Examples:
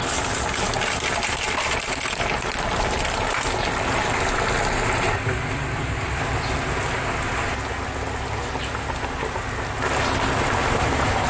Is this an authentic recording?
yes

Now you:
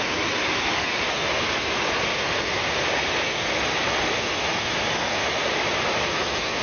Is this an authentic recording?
yes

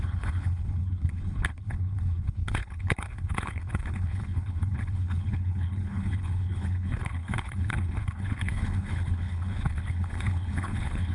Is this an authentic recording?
no